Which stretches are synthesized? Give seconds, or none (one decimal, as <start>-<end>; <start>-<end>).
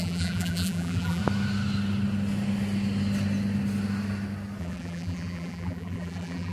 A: 0.0-1.2; 4.6-6.5